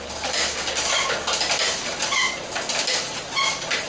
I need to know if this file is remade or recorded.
recorded